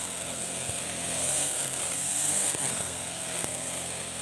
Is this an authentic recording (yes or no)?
no